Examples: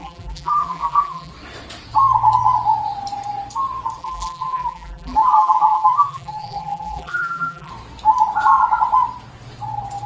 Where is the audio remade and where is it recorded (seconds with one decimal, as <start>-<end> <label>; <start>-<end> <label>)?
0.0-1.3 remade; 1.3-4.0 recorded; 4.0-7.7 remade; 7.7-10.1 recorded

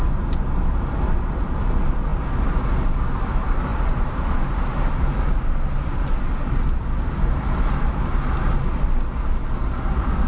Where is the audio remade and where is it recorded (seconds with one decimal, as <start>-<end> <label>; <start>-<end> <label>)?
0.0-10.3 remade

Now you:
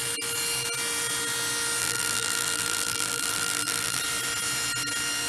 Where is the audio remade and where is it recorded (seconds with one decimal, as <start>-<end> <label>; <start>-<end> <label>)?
0.0-1.8 recorded; 1.8-4.0 remade; 4.0-5.3 recorded